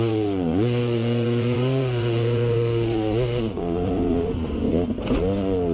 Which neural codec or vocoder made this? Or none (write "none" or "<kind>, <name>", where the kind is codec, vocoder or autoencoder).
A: vocoder, Vocos